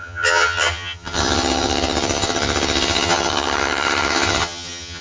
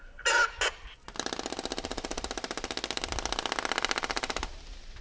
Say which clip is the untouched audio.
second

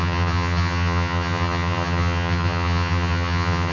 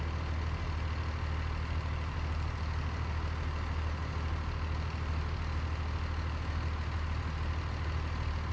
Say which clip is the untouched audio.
second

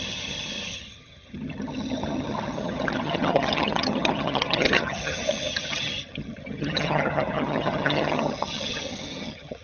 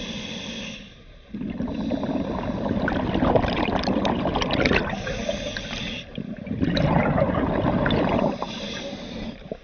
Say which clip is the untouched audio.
second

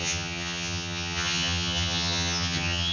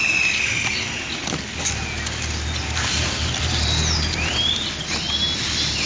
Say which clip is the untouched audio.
second